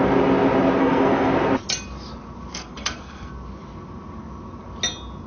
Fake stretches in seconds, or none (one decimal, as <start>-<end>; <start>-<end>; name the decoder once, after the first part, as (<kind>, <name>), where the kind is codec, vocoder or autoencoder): 0.8-1.3 (codec, SNAC); 2.5-3.3